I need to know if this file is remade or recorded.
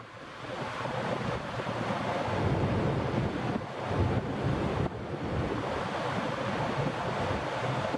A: recorded